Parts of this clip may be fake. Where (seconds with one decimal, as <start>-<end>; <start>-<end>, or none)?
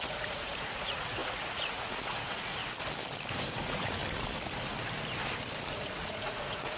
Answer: 0.0-2.6; 3.5-4.0; 5.8-6.8